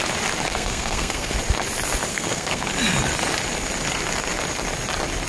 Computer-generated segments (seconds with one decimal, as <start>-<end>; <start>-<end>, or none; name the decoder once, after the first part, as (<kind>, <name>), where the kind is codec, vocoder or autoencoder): 0.5-1.3 (codec, SNAC); 2.1-2.7